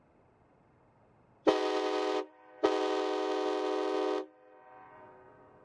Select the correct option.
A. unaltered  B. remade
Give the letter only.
A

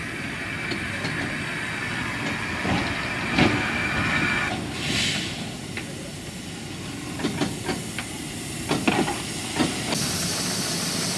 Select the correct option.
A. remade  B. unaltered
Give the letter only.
B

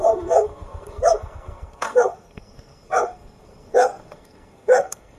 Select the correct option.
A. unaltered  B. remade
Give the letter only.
B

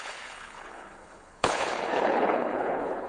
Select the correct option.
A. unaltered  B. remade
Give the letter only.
B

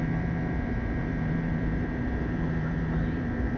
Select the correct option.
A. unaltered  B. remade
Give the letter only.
B